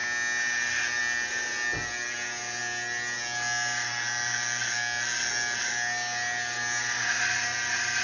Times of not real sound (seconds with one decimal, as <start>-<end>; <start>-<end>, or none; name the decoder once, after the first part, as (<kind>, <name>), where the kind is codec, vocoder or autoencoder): none